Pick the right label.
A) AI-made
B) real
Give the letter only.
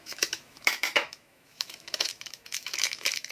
A